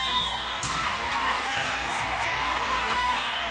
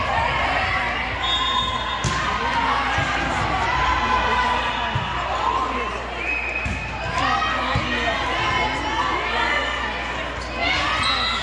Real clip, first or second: second